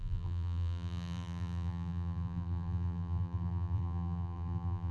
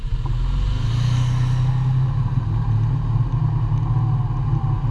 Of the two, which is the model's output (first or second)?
first